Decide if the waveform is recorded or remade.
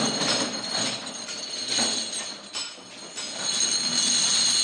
recorded